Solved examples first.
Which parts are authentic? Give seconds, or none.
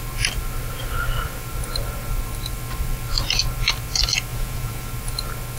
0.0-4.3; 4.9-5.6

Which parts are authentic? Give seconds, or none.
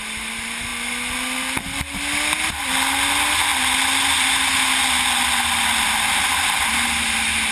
0.0-7.5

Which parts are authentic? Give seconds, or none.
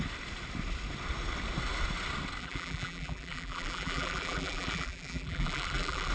0.0-2.4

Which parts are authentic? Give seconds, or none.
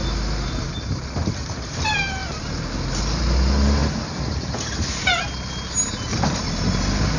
0.0-7.2